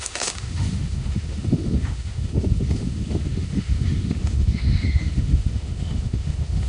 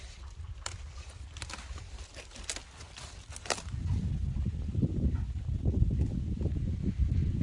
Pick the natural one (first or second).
second